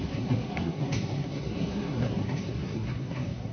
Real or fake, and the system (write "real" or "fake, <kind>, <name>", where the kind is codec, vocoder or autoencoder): fake, codec, SNAC